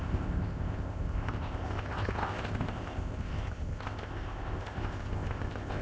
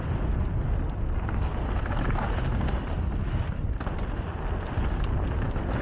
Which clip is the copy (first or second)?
first